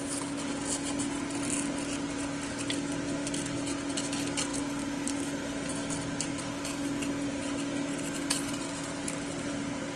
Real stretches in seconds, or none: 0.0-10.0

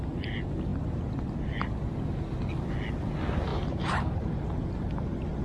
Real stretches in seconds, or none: 0.0-5.4

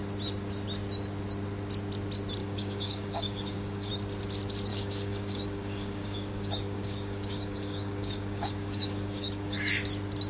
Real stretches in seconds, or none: 0.0-2.4; 3.9-4.7; 9.7-10.3

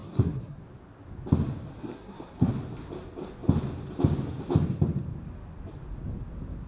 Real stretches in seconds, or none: 0.6-1.8; 2.5-6.7

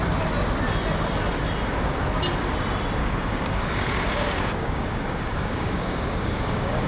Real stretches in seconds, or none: 0.0-3.0

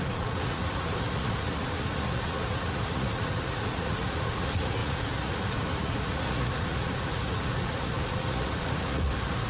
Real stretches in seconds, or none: none

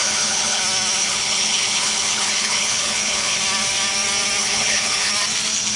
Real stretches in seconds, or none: 0.6-1.0; 3.4-4.4; 5.1-5.8

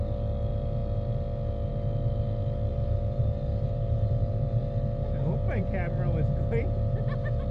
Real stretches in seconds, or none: 0.0-2.7; 4.6-7.5